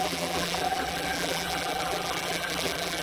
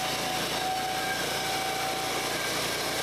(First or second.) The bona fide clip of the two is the second